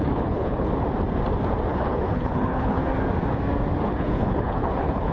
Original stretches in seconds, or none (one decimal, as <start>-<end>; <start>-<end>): 0.7-1.7; 2.8-3.8